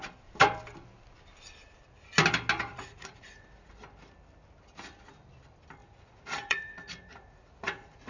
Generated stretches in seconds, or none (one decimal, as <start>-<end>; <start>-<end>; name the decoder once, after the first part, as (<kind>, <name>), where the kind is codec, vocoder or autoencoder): 2.7-3.7 (vocoder, Vocos); 5.8-8.1